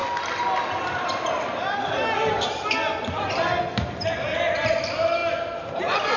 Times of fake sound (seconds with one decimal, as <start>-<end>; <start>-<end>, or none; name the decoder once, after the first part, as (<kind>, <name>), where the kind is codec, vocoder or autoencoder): none